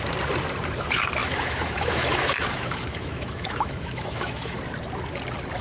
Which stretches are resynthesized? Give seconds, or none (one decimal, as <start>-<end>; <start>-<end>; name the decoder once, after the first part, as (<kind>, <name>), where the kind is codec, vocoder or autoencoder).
1.2-4.6 (autoencoder, DAC-VAE)